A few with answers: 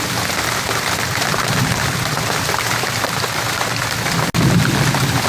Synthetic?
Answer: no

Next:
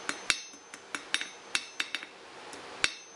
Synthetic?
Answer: no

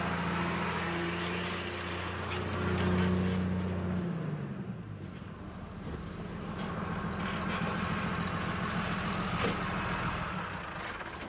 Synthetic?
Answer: no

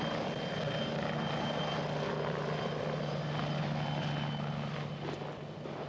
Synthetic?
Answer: no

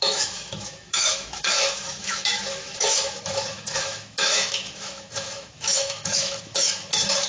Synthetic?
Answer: yes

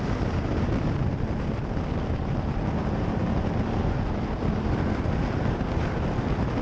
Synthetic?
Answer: no